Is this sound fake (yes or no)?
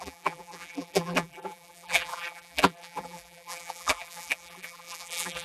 yes